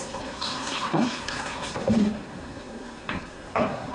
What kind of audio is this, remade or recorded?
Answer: remade